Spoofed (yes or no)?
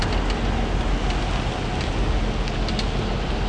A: no